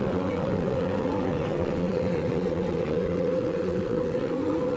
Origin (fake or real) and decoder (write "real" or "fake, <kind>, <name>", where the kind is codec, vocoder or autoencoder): fake, vocoder, WaveNeXt